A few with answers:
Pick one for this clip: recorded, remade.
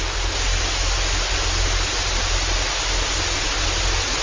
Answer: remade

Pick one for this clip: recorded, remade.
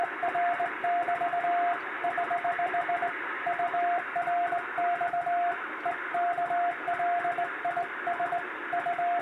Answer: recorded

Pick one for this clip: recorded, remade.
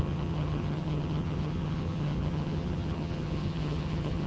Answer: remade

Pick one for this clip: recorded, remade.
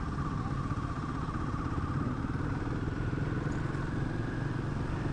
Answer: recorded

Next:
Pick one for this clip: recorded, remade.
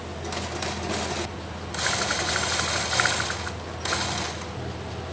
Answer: recorded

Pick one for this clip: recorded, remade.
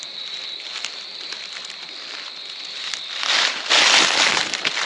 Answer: remade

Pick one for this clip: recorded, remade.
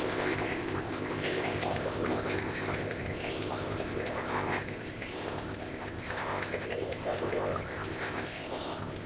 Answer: remade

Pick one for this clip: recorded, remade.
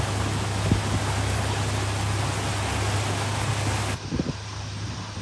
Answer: recorded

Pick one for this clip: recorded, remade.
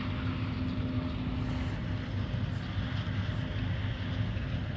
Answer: recorded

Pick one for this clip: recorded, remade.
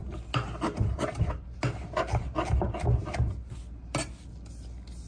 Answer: recorded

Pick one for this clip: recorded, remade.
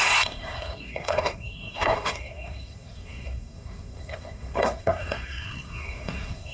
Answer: remade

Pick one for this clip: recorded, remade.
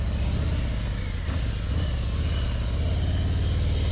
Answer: recorded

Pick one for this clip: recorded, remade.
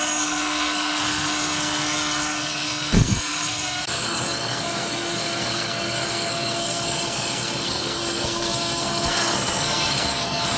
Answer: remade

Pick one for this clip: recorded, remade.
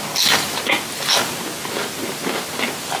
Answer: recorded